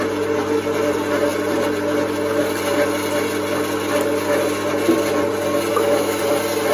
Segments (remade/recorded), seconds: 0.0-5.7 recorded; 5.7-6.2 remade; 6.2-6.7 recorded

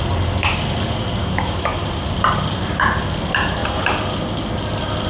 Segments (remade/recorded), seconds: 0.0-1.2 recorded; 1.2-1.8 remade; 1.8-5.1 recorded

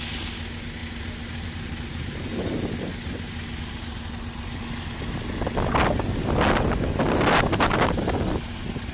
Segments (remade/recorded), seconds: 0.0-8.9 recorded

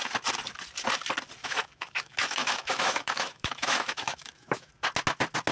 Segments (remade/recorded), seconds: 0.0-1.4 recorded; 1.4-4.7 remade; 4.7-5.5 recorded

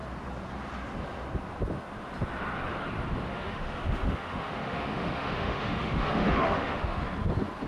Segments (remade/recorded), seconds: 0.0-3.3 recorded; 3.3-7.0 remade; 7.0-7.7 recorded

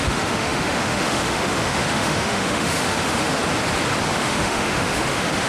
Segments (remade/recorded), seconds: 0.0-3.4 remade; 3.4-4.2 recorded; 4.2-5.5 remade

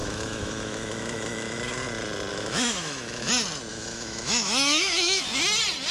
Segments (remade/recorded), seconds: 0.0-1.6 remade; 1.6-2.3 recorded; 2.3-3.3 remade; 3.3-3.7 recorded; 3.7-5.2 remade; 5.2-5.9 recorded